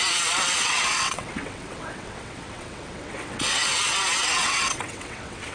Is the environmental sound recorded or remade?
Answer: remade